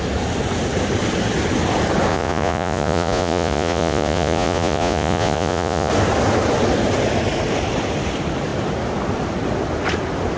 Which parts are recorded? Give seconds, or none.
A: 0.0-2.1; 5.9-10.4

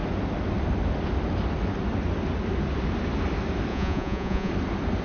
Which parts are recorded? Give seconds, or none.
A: 0.0-3.7; 4.5-5.0

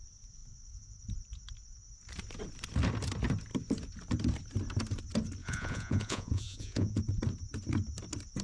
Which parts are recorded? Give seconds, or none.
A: 0.0-5.4; 7.0-8.4

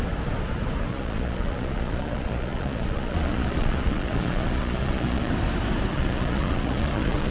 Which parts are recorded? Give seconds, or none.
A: 0.0-0.9; 5.3-5.9